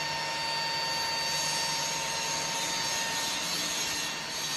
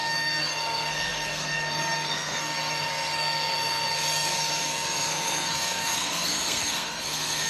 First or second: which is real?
first